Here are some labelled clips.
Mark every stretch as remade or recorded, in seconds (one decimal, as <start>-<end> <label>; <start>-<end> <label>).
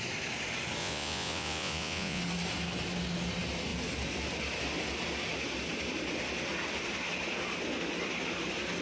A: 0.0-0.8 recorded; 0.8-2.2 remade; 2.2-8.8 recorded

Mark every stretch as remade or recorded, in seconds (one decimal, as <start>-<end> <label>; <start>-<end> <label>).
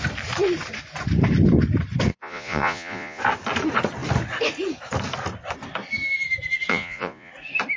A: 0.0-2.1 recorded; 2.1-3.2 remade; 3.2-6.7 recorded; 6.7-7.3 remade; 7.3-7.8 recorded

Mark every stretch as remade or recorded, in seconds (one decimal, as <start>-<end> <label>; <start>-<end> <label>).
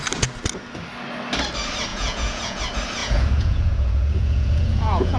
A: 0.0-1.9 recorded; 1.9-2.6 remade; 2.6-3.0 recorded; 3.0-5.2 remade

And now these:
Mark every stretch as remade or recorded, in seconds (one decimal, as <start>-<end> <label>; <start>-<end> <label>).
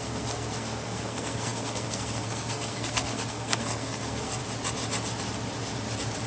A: 0.0-4.4 remade; 4.4-6.3 recorded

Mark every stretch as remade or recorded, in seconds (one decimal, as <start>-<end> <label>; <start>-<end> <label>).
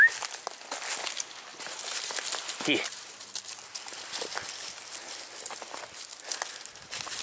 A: 0.0-1.5 recorded; 1.5-4.5 remade; 4.5-7.2 recorded